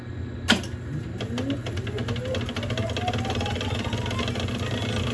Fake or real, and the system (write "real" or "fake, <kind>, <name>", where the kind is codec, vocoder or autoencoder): real